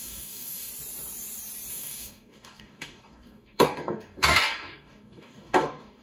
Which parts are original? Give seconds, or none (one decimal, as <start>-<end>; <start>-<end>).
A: 0.7-1.7